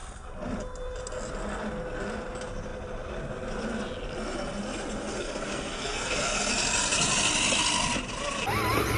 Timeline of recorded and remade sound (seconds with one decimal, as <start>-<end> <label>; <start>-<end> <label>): 0.0-5.1 recorded; 5.1-6.5 remade; 6.5-9.0 recorded